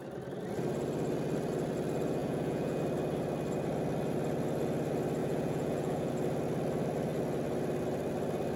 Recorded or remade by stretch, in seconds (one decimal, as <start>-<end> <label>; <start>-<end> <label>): 0.0-2.2 recorded; 2.2-2.8 remade; 2.8-5.2 recorded; 5.2-6.1 remade; 6.1-8.6 recorded